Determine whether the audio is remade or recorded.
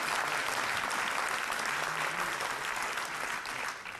recorded